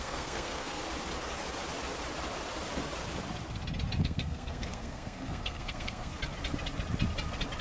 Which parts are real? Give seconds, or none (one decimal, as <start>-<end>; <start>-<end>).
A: 0.8-4.0; 6.1-7.6